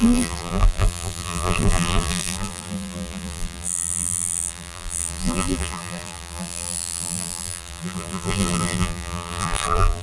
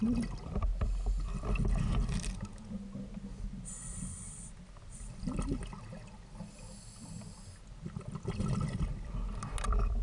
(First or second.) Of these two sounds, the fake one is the first